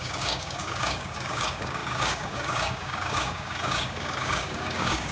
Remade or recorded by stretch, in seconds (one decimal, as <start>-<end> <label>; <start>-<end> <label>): 0.0-5.1 remade